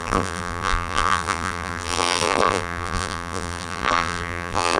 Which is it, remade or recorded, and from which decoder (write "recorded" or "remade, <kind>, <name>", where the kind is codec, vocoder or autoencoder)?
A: remade, vocoder, BigVGAN v2